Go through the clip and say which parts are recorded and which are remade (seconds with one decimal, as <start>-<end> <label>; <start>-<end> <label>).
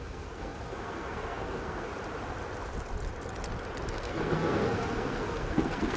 0.0-1.9 remade; 1.9-3.9 recorded; 3.9-6.0 remade